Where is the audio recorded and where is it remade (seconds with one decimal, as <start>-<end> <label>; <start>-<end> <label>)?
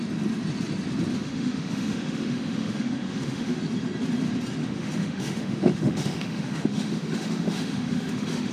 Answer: 0.0-1.1 recorded; 1.1-3.6 remade; 3.6-4.6 recorded; 4.6-8.5 remade